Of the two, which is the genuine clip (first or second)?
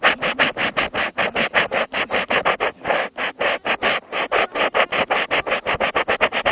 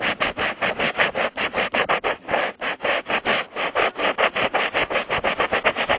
first